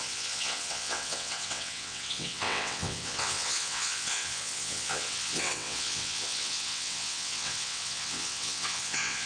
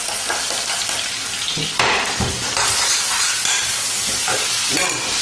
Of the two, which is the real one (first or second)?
second